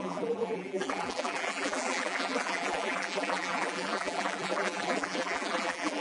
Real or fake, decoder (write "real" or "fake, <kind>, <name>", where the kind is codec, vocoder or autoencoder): fake, vocoder, BigVGAN v2